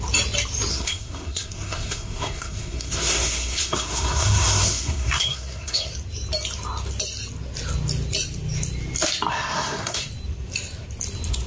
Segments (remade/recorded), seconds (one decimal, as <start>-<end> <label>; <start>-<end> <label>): 0.0-0.7 recorded; 0.7-5.9 remade; 5.9-9.3 recorded; 9.3-10.1 remade; 10.1-11.5 recorded